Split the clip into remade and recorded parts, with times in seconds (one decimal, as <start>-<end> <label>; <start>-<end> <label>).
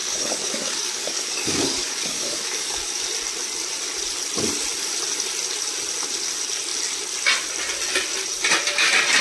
0.0-3.0 remade; 3.0-9.2 recorded